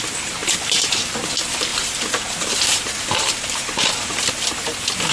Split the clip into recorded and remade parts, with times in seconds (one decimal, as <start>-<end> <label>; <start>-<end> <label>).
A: 0.0-0.4 recorded; 0.4-1.2 remade; 1.2-1.7 recorded; 1.7-4.3 remade; 4.3-5.1 recorded